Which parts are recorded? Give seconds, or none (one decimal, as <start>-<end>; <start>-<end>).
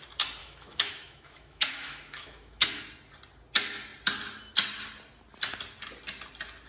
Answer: 0.0-0.4; 2.8-6.7